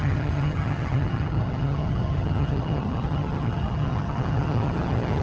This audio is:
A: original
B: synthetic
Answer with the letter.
B